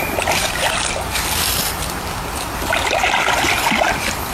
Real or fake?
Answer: fake